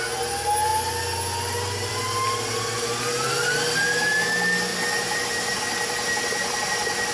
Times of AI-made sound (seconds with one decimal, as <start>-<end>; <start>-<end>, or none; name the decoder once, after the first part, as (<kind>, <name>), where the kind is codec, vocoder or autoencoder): 4.7-5.6 (vocoder, BigVGAN v2)